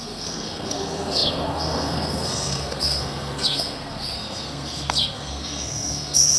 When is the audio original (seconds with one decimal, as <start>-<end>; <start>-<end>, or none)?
none